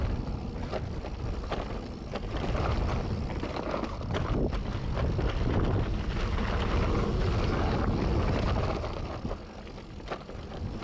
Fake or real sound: real